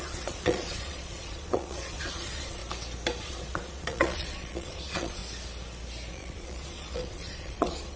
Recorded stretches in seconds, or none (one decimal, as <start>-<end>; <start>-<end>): 2.6-3.2; 5.2-6.1